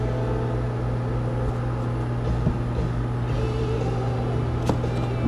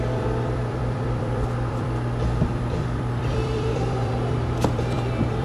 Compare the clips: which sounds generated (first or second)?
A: second